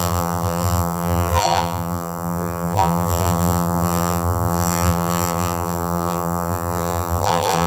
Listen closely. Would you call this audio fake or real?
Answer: fake